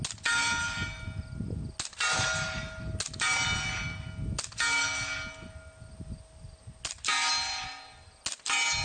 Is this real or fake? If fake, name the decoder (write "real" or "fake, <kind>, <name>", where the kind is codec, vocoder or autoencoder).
real